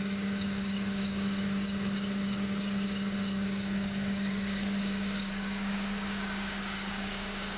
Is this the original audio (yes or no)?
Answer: no